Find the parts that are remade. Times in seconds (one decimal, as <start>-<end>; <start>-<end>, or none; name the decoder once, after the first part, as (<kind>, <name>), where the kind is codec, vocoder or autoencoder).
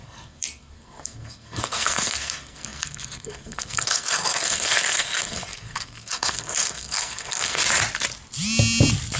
0.0-7.6 (codec, SNAC)